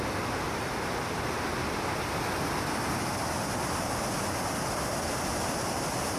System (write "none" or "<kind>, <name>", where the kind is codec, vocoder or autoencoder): none